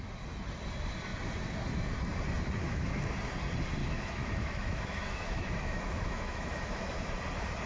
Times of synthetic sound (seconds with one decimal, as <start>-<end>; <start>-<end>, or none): 2.6-3.2; 3.8-7.1